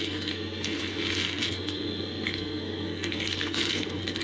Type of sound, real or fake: fake